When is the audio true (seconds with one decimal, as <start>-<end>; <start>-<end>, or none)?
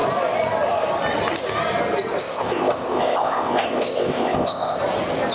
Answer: 0.0-2.2; 4.8-5.3